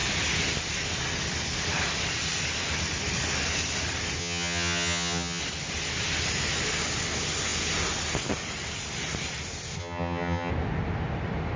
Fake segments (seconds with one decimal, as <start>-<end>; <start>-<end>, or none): 4.2-5.4; 9.8-10.5